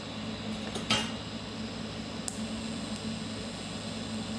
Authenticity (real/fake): real